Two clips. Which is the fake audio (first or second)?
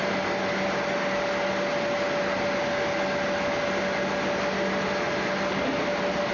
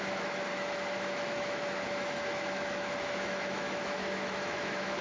second